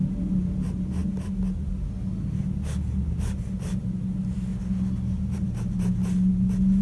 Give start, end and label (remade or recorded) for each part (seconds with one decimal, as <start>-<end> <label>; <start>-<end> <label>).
0.0-6.8 recorded